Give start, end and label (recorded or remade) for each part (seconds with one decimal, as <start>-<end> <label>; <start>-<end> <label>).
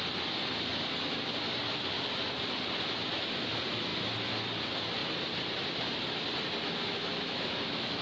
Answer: 0.0-6.6 recorded; 6.6-8.0 remade